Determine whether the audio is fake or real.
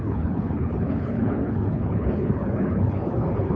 fake